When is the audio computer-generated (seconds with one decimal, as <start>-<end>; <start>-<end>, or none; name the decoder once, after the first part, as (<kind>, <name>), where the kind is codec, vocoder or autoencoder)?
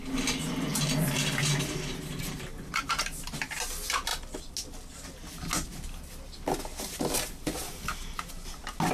none